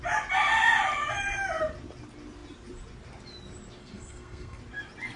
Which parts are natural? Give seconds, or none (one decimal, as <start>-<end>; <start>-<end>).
0.0-3.8; 4.6-5.2